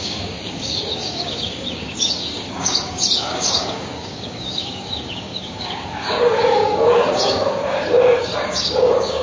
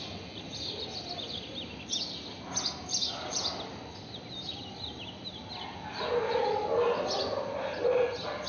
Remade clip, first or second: first